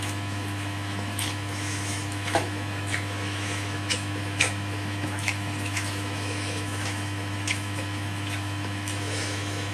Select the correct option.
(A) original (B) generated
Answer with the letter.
B